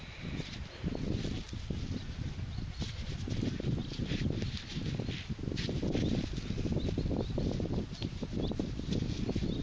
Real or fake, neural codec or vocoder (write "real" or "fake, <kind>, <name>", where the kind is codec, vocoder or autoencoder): real